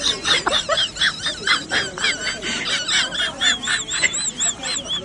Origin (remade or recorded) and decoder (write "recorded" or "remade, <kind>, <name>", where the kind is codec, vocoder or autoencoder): recorded